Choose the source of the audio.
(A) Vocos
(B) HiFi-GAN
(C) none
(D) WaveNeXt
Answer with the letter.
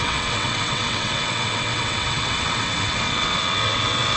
D